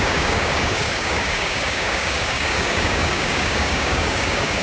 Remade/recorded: remade